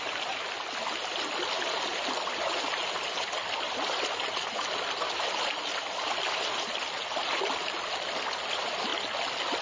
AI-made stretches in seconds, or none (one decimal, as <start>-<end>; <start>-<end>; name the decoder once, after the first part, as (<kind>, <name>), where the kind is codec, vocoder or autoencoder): none